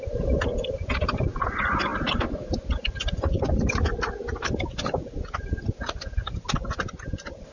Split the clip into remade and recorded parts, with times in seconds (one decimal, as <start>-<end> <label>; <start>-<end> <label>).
0.0-7.5 recorded